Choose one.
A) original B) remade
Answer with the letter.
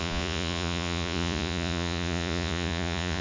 B